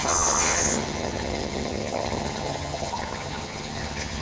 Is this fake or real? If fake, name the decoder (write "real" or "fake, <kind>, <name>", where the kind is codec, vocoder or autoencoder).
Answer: fake, vocoder, HiFi-GAN